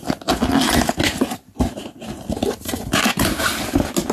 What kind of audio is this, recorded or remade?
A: recorded